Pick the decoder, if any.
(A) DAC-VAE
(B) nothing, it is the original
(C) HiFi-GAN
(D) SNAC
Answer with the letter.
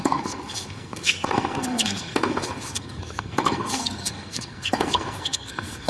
D